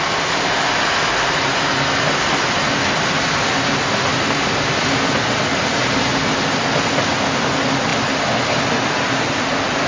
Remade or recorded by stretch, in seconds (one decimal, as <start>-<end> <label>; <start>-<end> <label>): 0.0-9.9 recorded